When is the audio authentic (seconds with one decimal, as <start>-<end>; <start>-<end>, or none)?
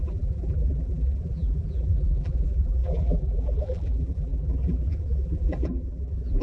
none